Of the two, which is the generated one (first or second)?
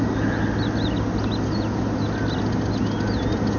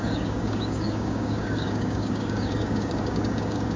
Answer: second